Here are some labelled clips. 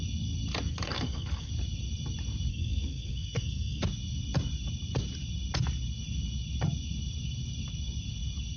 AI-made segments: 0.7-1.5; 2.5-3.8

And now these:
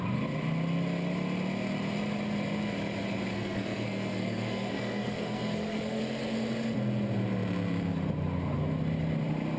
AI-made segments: 3.3-6.0

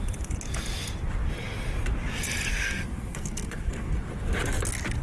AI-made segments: 2.5-4.0